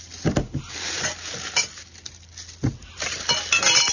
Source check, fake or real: real